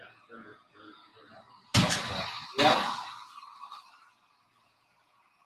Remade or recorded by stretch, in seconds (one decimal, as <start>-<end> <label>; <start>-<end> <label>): 0.0-1.1 remade; 1.1-4.4 recorded; 4.4-5.5 remade